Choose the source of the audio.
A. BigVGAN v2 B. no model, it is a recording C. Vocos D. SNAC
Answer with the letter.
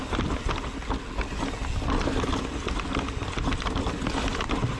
B